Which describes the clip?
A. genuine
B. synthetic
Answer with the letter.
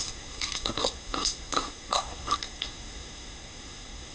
B